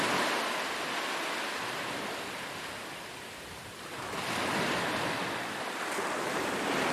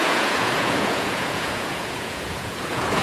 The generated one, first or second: second